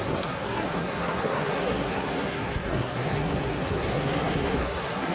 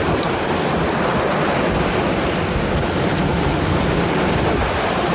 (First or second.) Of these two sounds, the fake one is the first